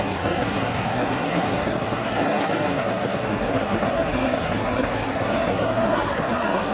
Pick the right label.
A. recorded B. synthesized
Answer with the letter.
B